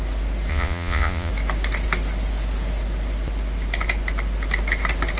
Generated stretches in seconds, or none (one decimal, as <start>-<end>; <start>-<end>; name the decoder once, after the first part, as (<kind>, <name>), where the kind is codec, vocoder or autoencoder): 0.5-1.3 (vocoder, Vocos)